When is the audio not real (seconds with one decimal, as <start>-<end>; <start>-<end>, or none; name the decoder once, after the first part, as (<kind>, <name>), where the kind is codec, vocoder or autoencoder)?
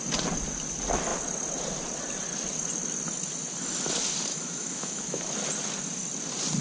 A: 4.3-5.2 (autoencoder, DAC-VAE)